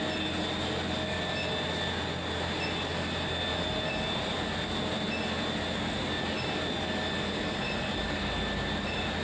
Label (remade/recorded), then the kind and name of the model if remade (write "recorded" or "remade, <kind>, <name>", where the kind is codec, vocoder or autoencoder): recorded